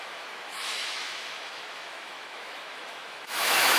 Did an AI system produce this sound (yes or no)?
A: yes